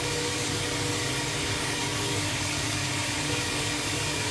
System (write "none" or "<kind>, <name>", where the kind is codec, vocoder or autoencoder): codec, DAC